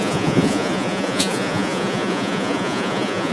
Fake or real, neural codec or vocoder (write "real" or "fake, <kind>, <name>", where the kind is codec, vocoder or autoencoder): fake, vocoder, Vocos